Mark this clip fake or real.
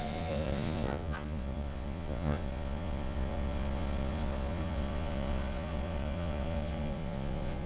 fake